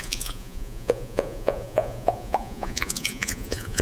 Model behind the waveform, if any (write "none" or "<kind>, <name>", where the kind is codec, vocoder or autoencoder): vocoder, Vocos